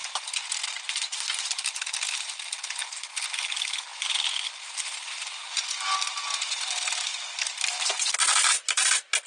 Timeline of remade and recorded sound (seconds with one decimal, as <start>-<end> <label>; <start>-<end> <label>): 0.0-9.3 recorded